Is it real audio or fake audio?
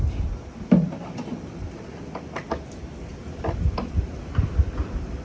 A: real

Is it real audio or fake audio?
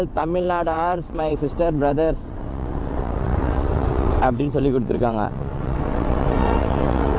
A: fake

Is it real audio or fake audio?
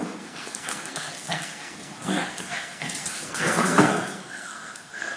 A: fake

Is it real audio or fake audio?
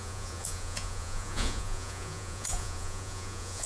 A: fake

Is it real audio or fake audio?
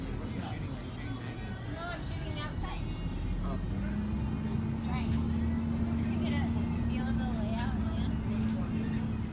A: real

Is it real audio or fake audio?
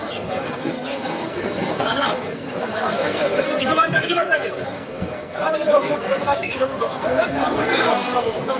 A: fake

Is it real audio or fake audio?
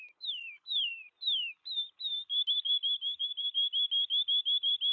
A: real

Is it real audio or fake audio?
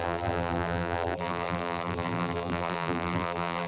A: fake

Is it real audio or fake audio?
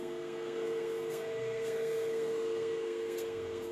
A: fake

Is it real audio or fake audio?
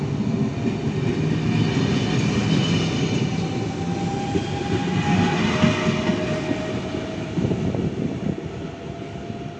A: real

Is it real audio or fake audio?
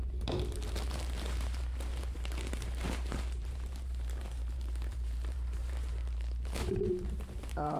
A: fake